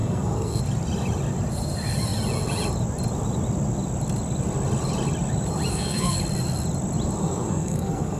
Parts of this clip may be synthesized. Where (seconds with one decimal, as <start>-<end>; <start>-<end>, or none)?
0.0-0.6; 5.7-6.2; 7.2-8.2